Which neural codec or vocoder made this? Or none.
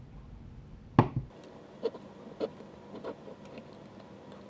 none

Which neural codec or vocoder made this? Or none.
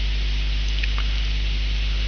none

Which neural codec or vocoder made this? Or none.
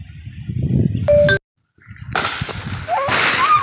none